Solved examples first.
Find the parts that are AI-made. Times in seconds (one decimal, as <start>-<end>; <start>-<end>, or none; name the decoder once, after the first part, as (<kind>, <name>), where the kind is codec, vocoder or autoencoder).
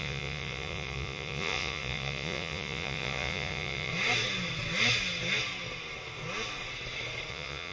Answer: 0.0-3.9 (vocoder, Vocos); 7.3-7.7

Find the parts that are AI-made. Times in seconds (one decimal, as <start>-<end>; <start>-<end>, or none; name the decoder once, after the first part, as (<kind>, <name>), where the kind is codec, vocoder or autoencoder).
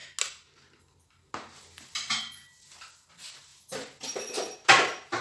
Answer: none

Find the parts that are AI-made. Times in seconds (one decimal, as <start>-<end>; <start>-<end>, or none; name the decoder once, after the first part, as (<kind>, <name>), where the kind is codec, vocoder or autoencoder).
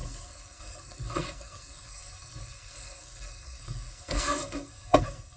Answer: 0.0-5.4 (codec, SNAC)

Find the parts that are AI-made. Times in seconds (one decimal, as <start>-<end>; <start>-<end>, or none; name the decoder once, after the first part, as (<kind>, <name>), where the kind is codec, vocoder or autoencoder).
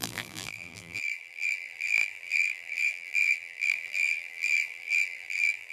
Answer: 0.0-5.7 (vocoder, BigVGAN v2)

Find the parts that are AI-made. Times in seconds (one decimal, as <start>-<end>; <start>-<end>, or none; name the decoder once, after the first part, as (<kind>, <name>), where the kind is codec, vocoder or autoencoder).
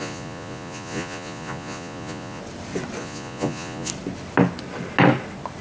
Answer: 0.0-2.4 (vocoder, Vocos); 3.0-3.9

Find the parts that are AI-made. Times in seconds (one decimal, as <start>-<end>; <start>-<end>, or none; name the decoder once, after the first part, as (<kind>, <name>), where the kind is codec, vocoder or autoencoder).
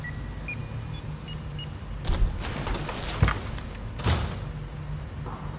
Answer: none